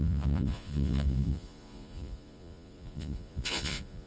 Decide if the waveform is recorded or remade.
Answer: remade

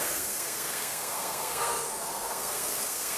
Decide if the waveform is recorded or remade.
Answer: remade